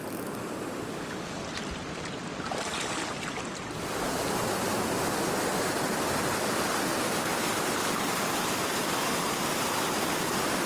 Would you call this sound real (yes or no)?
yes